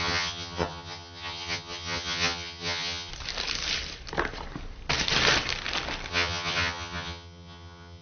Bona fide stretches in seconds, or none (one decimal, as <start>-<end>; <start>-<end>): 3.1-6.1

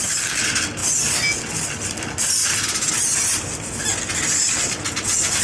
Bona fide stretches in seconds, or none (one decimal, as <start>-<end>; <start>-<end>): 0.0-5.4